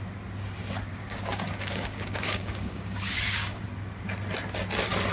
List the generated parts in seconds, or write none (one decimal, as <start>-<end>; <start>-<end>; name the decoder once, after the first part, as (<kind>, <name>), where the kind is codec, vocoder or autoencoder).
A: 0.9-3.6 (codec, DAC)